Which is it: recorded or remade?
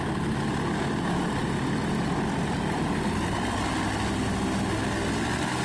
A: recorded